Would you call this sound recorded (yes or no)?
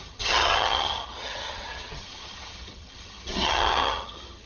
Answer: no